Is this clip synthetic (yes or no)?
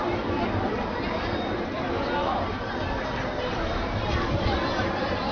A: yes